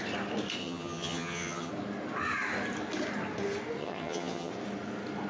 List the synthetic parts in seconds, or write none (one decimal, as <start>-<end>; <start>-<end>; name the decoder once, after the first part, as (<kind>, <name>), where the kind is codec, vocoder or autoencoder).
0.6-1.7 (vocoder, HiFi-GAN); 3.8-4.5